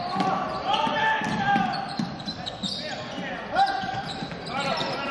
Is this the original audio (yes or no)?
yes